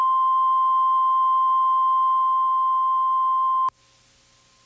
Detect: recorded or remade recorded